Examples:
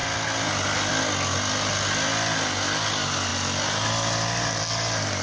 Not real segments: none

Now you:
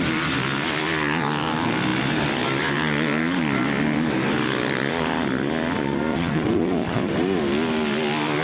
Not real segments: 6.1-7.1

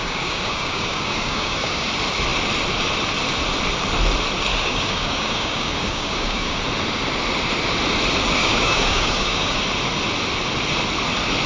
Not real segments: 0.0-1.9; 4.5-6.6; 8.4-9.6

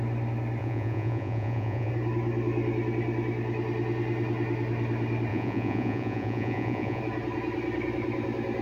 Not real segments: 0.6-1.9; 5.3-7.0